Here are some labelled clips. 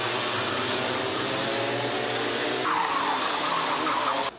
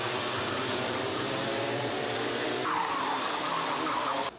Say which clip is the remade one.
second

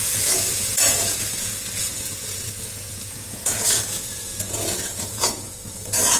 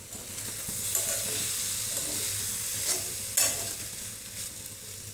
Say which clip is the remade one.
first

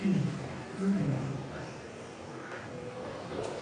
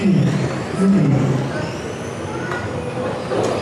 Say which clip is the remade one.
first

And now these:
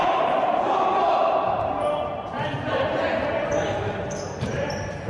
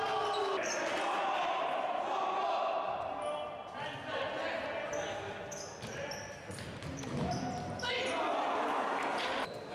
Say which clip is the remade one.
first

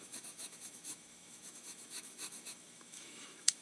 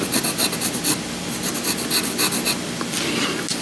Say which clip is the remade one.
first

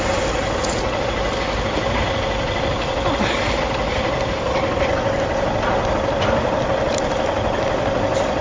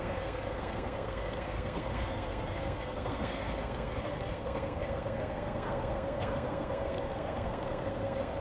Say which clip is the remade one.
second